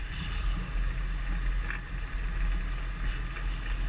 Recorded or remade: recorded